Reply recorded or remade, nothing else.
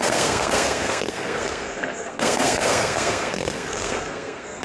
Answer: remade